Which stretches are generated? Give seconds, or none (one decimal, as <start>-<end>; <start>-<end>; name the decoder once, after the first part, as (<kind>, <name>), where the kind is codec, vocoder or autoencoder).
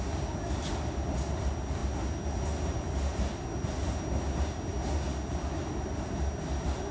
none